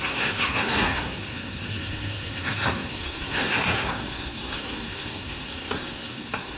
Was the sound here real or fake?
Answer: fake